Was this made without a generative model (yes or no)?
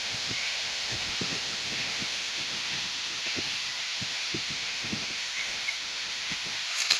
no